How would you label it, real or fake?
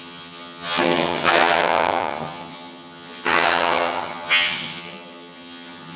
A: fake